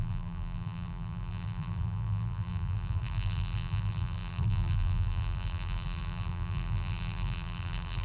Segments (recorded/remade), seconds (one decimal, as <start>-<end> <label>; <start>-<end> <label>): 0.0-8.0 remade